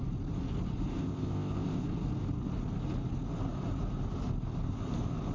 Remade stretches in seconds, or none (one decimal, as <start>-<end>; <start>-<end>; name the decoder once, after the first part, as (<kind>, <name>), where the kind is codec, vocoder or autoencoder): 1.0-1.8 (codec, ZipCodec)